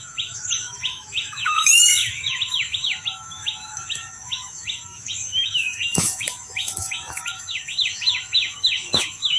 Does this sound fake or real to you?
fake